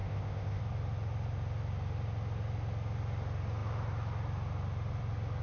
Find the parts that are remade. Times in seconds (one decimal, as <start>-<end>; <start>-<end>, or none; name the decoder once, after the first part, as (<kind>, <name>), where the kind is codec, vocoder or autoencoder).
0.0-0.6 (codec, ZipCodec)